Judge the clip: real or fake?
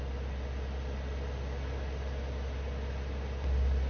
real